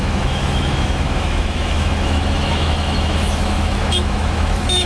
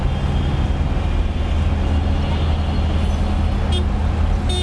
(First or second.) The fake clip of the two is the first